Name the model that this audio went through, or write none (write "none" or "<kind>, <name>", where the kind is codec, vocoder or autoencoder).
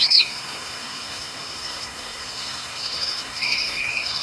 codec, SNAC